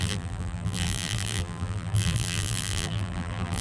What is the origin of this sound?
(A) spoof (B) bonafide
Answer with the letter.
A